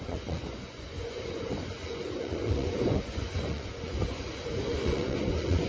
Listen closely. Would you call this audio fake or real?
fake